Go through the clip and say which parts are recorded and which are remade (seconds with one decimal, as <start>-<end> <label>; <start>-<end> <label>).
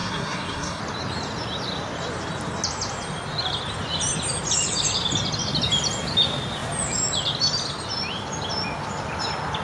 0.0-0.8 remade; 0.8-9.6 recorded